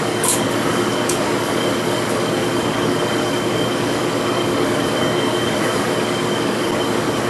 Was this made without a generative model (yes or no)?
no